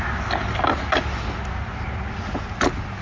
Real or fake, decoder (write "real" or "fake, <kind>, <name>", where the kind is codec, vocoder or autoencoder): real